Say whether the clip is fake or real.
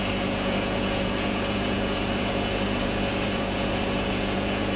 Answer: fake